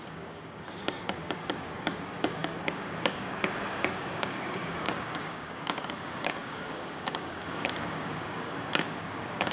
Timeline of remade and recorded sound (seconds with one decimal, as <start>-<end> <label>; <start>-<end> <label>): 0.0-9.5 remade

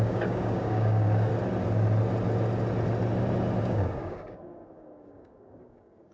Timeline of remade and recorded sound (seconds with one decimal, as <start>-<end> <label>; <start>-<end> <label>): 0.0-1.3 remade; 1.3-3.6 recorded; 3.6-6.1 remade

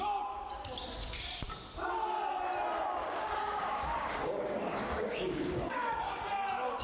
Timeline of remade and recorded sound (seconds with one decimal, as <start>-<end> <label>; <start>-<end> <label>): 0.0-3.0 recorded; 3.0-6.2 remade; 6.2-6.8 recorded

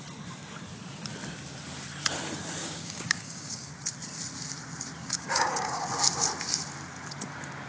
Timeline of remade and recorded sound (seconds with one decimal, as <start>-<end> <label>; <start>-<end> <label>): 0.0-2.6 recorded; 2.6-3.7 remade; 3.7-5.0 recorded; 5.0-5.8 remade; 5.8-7.7 recorded

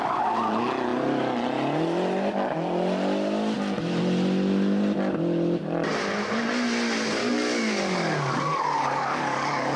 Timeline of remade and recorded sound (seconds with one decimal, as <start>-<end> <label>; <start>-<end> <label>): 0.0-7.2 recorded; 7.2-9.8 remade

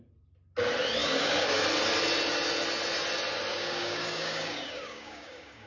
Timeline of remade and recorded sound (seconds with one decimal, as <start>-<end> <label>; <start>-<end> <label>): 0.0-1.0 recorded; 1.0-1.6 remade; 1.6-3.5 recorded; 3.5-5.7 remade

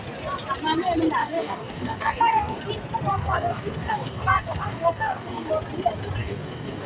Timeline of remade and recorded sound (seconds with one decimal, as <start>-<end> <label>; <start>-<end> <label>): 0.0-1.2 recorded; 1.2-2.6 remade; 2.6-3.1 recorded; 3.1-5.5 remade; 5.5-6.2 recorded; 6.2-6.9 remade